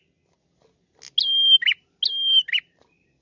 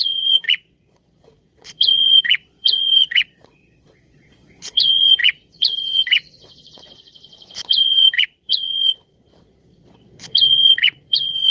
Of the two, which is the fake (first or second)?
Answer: second